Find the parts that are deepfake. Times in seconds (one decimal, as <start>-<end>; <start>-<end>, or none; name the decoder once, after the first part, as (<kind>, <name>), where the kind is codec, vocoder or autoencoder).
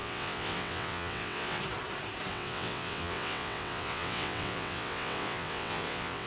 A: 0.0-1.6 (vocoder, WaveNeXt); 2.3-6.3